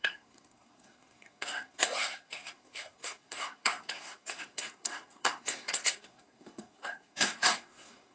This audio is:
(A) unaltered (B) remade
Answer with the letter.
B